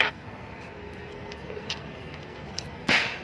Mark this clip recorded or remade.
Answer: remade